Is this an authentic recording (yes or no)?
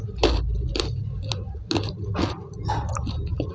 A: yes